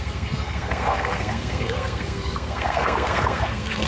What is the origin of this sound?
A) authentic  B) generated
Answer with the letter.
B